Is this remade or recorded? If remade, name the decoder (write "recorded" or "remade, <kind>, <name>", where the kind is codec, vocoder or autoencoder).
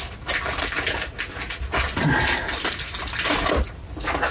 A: recorded